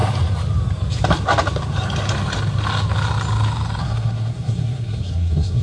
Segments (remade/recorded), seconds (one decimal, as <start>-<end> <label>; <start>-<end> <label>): 0.0-3.8 recorded; 3.8-5.6 remade